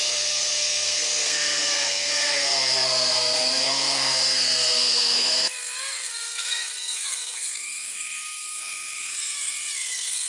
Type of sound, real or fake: fake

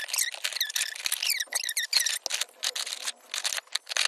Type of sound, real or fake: real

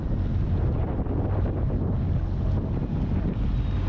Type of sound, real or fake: real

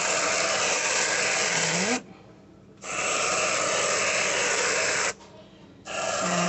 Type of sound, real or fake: fake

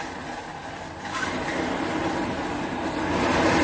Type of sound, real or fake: real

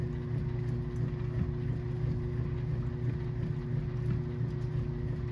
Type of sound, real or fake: real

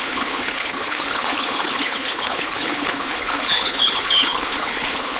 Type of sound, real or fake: fake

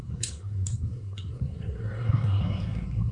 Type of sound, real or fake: fake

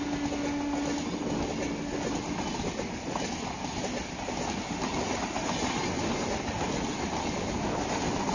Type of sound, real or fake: real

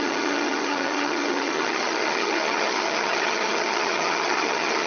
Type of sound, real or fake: fake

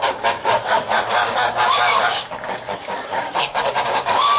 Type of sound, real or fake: fake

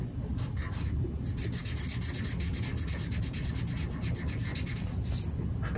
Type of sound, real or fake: real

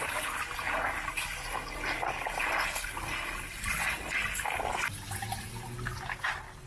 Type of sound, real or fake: real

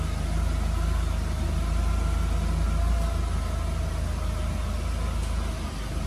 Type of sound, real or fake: real